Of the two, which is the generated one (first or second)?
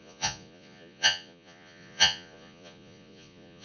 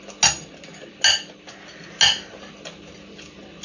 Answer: first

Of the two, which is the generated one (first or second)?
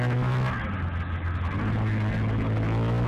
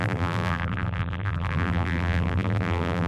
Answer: second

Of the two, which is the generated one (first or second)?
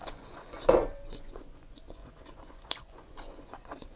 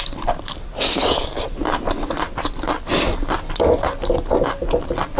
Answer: first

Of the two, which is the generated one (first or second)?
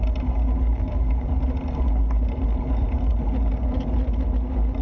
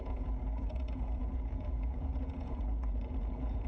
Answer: second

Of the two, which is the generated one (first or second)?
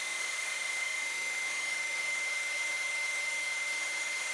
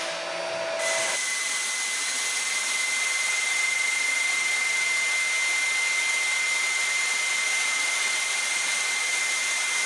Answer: first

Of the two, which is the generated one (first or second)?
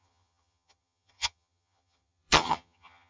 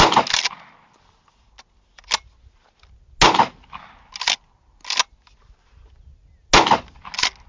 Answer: first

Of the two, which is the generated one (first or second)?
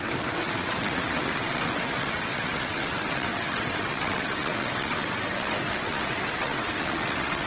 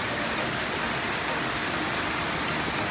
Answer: first